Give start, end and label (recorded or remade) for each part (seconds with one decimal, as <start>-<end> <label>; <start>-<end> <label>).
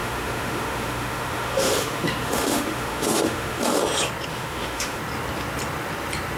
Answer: 0.0-3.8 remade; 3.8-4.3 recorded; 4.3-5.0 remade; 5.0-6.4 recorded